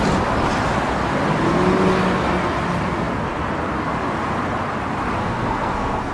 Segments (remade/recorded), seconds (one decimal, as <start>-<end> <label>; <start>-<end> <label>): 0.0-5.2 recorded; 5.2-6.1 remade